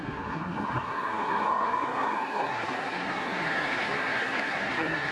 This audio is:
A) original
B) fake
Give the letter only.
B